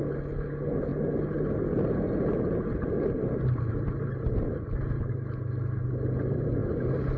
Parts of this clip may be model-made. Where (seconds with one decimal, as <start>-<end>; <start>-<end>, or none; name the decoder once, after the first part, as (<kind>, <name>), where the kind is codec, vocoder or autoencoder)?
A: none